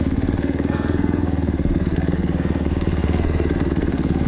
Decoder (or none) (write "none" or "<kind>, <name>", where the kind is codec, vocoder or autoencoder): codec, SNAC